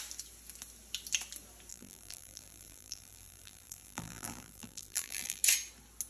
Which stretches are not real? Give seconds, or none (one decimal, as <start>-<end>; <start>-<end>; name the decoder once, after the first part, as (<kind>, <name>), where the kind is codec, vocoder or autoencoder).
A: 1.7-5.4 (vocoder, BigVGAN v2)